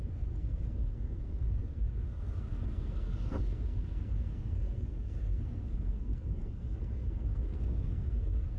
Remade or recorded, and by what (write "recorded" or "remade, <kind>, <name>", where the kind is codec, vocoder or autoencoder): remade, codec, SNAC